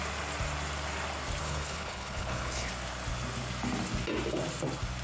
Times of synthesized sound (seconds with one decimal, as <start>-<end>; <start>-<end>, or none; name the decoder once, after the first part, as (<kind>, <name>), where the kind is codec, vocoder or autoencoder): 1.4-2.7 (codec, HILCodec)